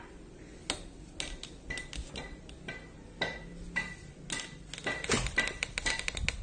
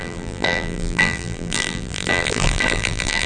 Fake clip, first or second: second